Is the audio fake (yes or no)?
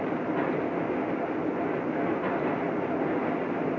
no